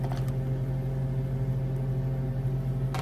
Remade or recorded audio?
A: recorded